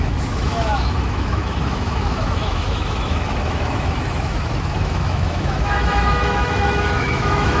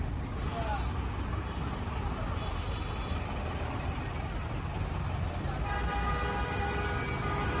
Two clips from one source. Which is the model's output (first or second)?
first